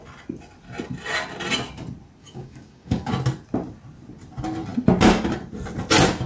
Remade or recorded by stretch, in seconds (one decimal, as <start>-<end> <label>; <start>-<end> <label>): 0.0-2.2 recorded; 2.2-3.1 remade; 3.1-6.3 recorded